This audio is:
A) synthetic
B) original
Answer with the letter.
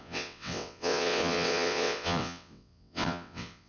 A